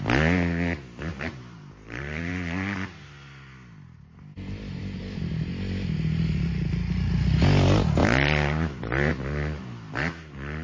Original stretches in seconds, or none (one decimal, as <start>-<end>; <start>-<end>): 0.0-1.1; 2.3-4.8; 5.5-8.0; 9.1-10.6